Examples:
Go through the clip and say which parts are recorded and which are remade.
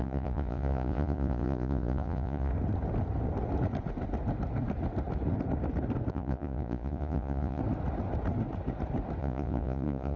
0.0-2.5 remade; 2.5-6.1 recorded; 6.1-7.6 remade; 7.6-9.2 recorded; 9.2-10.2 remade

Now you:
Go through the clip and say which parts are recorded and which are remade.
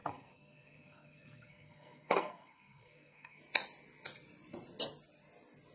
0.0-3.4 remade; 3.4-5.7 recorded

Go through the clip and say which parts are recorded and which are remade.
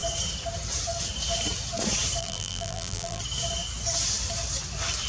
0.0-2.2 recorded; 2.2-3.2 remade; 3.2-5.1 recorded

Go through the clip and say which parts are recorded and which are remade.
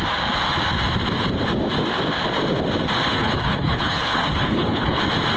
0.0-3.1 recorded; 3.1-5.0 remade; 5.0-5.4 recorded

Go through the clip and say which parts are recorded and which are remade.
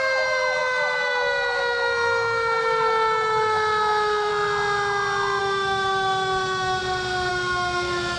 0.0-4.3 remade; 4.3-5.4 recorded; 5.4-6.8 remade; 6.8-7.3 recorded; 7.3-8.2 remade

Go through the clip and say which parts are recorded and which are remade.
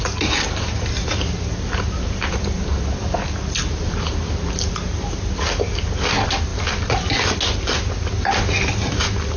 0.0-9.4 recorded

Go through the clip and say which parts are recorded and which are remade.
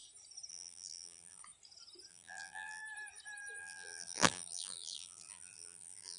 0.0-0.5 recorded; 0.5-1.4 remade; 1.4-2.1 recorded; 2.1-2.8 remade; 2.8-3.6 recorded; 3.6-6.2 remade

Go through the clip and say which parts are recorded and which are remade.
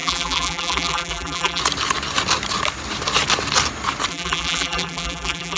0.0-1.6 remade; 1.6-4.1 recorded; 4.1-5.6 remade